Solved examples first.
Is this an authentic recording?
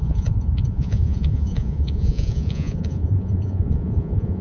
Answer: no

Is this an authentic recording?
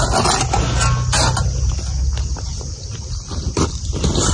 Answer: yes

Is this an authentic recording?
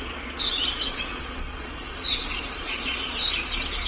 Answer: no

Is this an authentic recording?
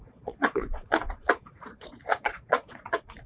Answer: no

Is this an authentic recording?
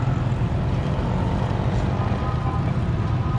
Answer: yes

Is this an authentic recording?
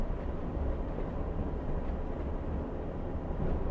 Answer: yes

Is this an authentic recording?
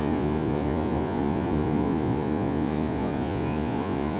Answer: no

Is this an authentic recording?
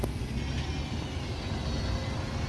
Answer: yes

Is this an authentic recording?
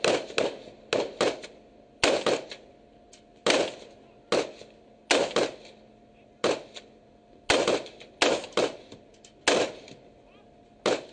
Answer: yes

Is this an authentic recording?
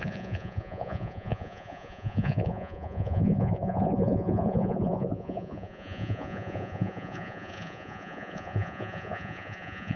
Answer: no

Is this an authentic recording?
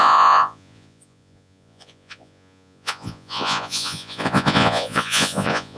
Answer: no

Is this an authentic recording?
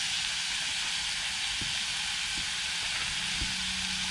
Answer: yes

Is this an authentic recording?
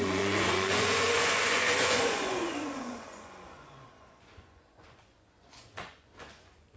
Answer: no